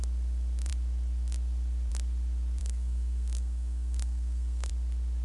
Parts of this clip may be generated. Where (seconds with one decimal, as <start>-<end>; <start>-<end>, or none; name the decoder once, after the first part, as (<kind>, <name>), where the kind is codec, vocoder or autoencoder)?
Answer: 2.6-4.7 (codec, SNAC)